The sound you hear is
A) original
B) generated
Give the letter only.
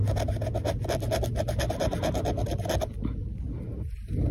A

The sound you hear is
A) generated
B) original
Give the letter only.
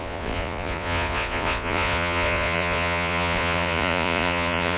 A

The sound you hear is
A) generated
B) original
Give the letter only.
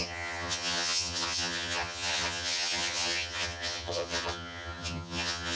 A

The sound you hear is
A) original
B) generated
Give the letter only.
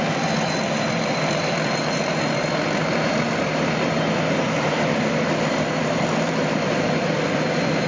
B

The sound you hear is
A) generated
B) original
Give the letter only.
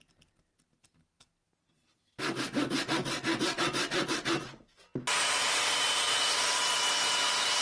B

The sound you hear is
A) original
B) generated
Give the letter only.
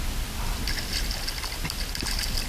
A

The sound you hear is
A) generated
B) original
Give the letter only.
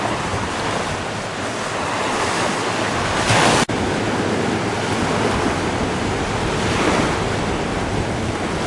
B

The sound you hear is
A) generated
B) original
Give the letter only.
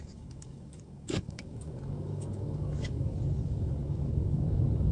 A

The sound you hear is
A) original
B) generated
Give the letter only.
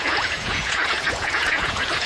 B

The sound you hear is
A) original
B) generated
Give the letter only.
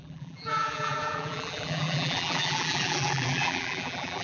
B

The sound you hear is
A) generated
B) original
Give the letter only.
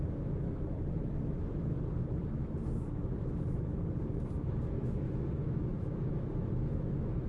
A